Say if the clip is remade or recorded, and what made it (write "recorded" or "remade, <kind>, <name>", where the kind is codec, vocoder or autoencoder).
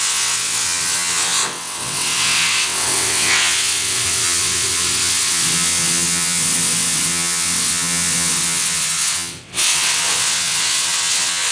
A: remade, vocoder, WaveNeXt